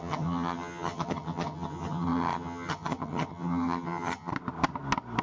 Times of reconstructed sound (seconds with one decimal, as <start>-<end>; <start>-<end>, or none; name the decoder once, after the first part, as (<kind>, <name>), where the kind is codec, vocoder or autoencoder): 0.0-4.3 (vocoder, HiFi-GAN)